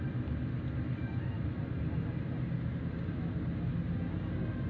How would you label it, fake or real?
real